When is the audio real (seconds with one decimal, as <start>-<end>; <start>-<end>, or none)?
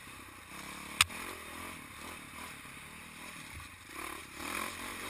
0.0-3.0; 3.8-4.2